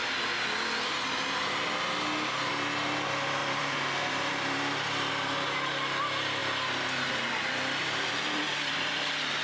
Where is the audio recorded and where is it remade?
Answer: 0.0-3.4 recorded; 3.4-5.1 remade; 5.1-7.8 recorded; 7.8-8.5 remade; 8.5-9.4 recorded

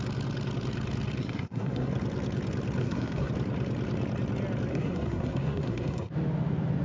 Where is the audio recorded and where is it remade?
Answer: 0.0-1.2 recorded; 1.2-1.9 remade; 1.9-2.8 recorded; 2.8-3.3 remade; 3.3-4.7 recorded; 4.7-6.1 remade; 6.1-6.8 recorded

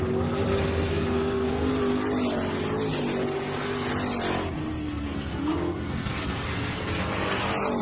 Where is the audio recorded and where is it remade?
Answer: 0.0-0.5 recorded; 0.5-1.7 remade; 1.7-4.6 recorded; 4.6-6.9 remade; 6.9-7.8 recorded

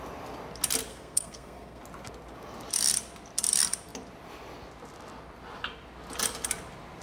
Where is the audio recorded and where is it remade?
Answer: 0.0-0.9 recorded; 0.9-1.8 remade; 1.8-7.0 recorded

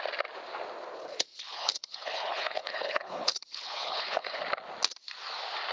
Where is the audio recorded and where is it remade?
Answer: 0.0-1.0 recorded; 1.0-4.4 remade; 4.4-5.7 recorded

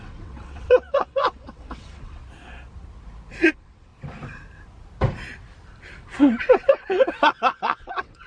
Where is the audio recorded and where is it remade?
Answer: 0.0-2.2 remade; 2.2-3.5 recorded; 3.5-3.9 remade; 3.9-6.4 recorded; 6.4-8.3 remade

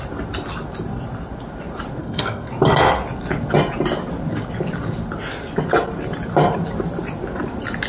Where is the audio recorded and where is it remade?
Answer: 0.0-2.0 recorded; 2.0-2.5 remade; 2.5-7.9 recorded